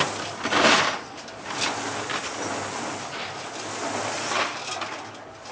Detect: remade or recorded recorded